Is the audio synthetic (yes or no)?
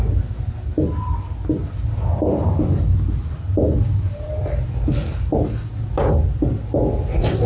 no